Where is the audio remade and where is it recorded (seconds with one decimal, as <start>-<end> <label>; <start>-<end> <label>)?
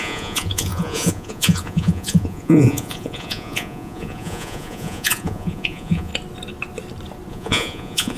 0.0-6.1 remade; 6.1-7.3 recorded; 7.3-8.2 remade